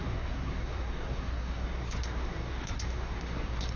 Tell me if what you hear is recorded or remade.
remade